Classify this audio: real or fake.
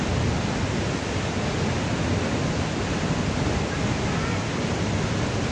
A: real